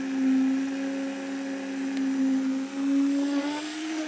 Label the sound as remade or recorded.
recorded